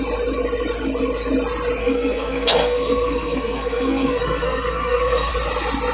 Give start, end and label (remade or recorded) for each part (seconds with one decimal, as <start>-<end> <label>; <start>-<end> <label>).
0.0-1.8 recorded; 1.8-5.3 remade; 5.3-5.9 recorded